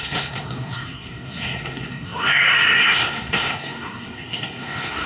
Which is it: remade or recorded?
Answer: remade